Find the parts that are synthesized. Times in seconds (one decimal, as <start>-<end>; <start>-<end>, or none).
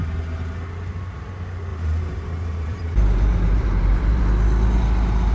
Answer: 1.7-4.2